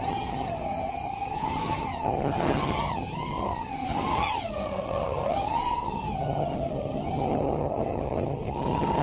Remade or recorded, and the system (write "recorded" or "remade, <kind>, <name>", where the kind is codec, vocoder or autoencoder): remade, vocoder, HiFi-GAN